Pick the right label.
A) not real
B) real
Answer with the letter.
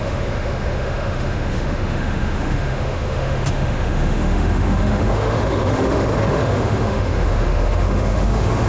A